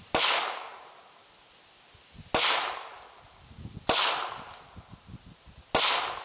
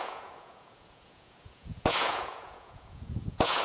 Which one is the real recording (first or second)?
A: first